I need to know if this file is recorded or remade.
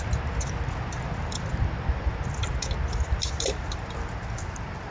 recorded